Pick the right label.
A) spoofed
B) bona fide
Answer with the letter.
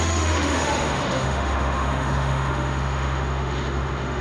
A